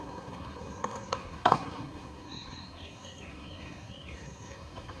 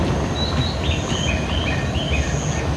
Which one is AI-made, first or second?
first